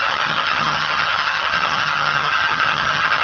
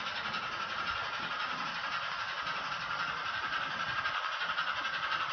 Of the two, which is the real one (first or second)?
second